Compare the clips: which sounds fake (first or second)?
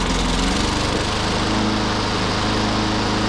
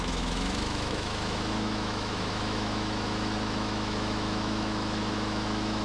second